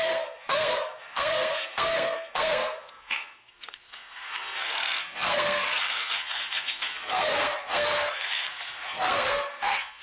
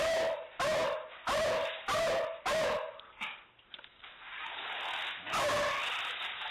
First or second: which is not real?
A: first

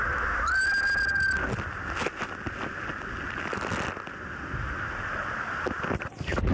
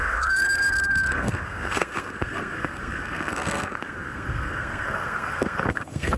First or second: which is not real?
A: second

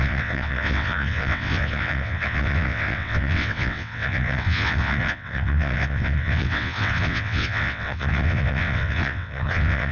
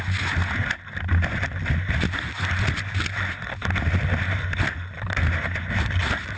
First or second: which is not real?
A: first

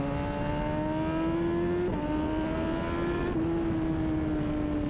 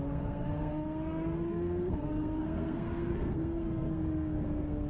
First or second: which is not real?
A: second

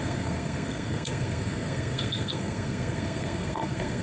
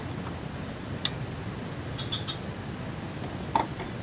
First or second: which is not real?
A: first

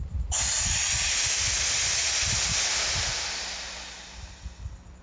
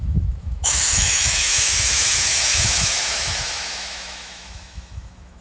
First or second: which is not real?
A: second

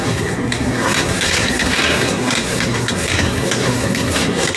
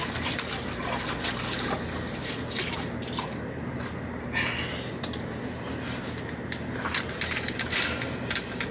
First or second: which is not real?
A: first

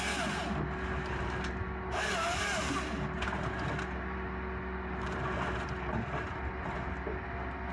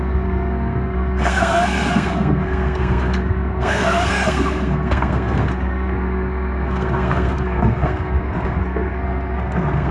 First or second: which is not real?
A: second